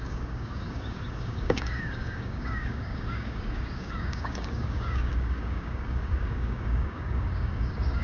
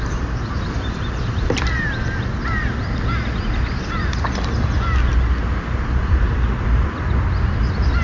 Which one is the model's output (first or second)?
first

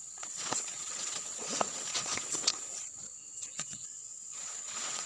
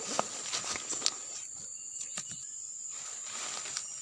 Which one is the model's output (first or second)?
first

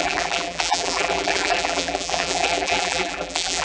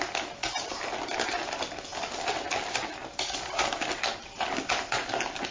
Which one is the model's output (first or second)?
first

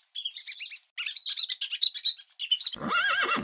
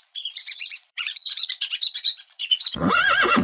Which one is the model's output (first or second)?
second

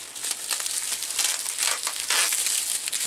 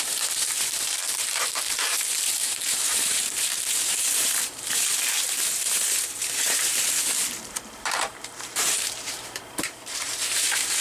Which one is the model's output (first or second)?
second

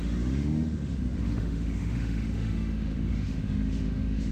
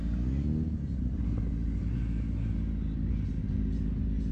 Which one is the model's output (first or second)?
first